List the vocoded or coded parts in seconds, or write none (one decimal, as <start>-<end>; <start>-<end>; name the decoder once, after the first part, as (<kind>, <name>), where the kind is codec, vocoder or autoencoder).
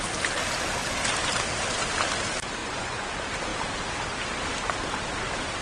2.6-3.1 (vocoder, Vocos)